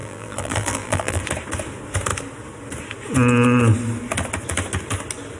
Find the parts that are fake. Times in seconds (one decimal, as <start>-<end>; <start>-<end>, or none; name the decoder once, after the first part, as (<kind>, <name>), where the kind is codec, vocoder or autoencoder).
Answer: 0.0-1.2 (vocoder, BigVGAN v2)